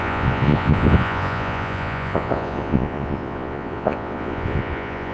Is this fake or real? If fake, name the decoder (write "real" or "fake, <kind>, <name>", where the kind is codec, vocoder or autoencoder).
fake, vocoder, Vocos